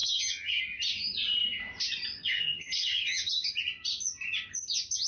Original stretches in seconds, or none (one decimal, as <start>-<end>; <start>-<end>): 0.6-2.2; 3.3-5.1